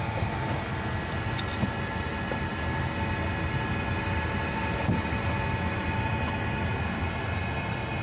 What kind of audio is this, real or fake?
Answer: real